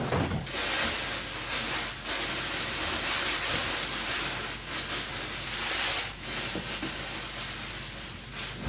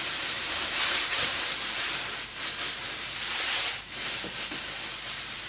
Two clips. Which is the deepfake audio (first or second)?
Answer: second